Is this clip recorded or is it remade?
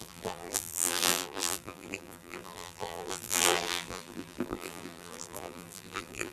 remade